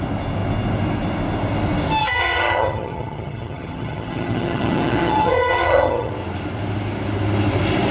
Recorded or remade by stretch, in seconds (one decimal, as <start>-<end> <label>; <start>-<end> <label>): 0.0-2.0 recorded; 2.0-6.1 remade; 6.1-7.9 recorded